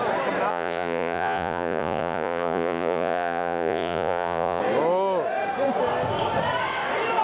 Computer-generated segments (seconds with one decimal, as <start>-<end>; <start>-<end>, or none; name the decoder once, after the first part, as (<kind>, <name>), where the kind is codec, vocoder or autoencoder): 0.5-4.6 (vocoder, Vocos)